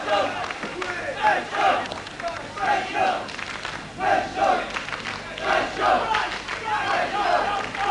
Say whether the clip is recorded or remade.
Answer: recorded